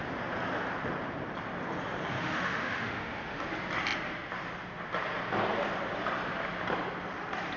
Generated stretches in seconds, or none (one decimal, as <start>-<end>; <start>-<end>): 2.2-3.4